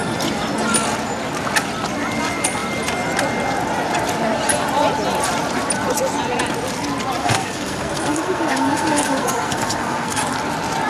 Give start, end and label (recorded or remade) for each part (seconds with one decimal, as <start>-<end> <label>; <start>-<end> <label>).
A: 0.0-7.2 recorded; 7.2-10.2 remade; 10.2-10.9 recorded